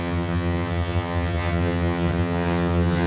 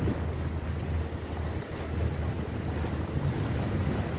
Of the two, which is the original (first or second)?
second